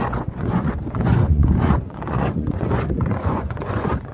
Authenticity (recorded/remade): remade